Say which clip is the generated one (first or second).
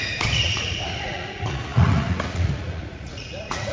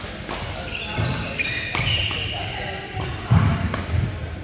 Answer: first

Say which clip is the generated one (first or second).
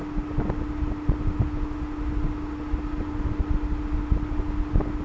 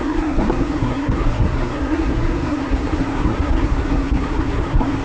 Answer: second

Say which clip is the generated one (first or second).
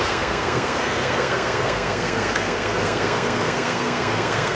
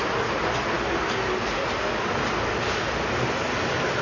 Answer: first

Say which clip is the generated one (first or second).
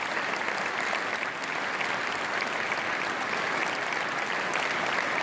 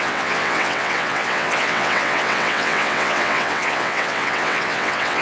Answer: second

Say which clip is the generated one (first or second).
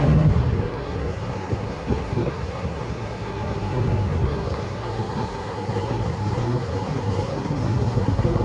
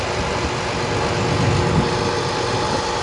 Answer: first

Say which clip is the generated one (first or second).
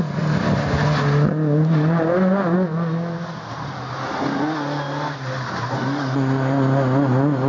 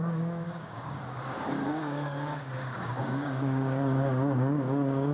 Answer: second